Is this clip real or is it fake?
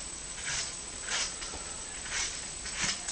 fake